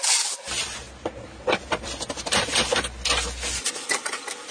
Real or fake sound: real